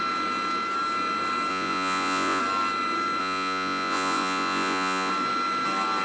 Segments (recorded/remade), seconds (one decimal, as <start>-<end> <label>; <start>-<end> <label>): 0.0-1.5 recorded; 1.5-2.4 remade; 2.4-3.2 recorded; 3.2-5.1 remade; 5.1-6.0 recorded